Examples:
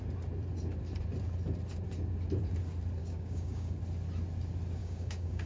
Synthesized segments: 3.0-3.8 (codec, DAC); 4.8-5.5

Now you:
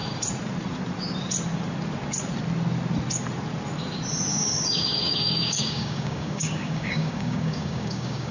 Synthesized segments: 4.3-8.3 (codec, DAC)

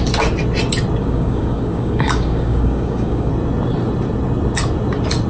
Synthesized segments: 1.0-3.3 (codec, DAC)

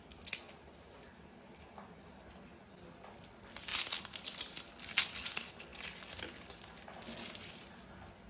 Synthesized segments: none

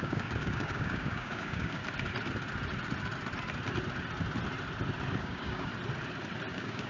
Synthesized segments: 0.0-1.8 (codec, DAC); 5.2-5.7; 6.5-6.9

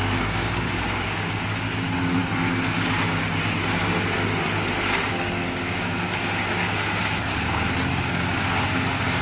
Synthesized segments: 0.0-2.2 (codec, DAC); 2.7-3.6; 5.1-7.3; 7.9-9.2

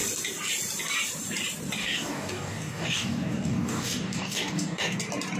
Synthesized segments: 1.8-5.0 (codec, DAC)